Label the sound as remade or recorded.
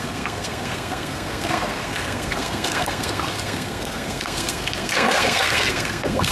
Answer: remade